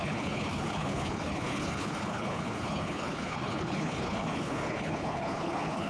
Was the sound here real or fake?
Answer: fake